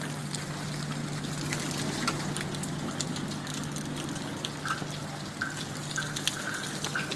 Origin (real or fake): real